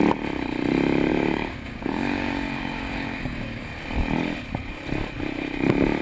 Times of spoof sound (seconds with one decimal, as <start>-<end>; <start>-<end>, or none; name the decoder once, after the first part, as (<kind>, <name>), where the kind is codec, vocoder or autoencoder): 1.1-3.6 (codec, DAC)